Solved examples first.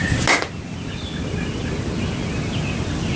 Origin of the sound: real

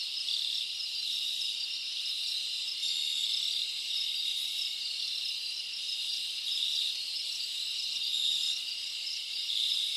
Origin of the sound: real